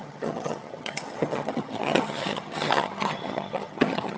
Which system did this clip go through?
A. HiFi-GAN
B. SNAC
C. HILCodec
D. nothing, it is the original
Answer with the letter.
A